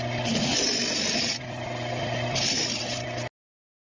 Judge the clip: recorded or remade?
recorded